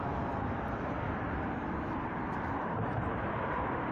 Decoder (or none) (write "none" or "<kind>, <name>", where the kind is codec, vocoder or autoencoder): none